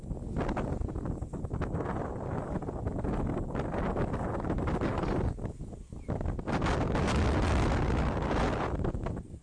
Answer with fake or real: real